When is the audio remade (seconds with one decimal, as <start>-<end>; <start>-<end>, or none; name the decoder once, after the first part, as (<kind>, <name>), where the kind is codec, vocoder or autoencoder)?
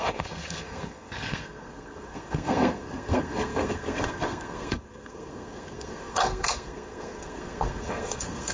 0.0-8.5 (codec, SNAC)